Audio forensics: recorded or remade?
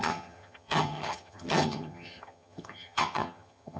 remade